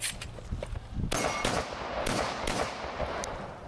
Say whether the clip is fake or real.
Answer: real